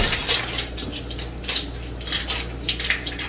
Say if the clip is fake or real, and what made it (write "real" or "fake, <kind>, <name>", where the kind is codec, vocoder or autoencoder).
real